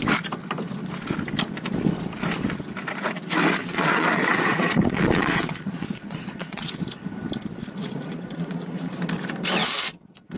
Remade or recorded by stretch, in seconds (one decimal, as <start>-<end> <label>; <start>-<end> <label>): 0.0-3.6 recorded; 3.6-6.7 remade; 6.7-7.8 recorded; 7.8-9.1 remade; 9.1-10.4 recorded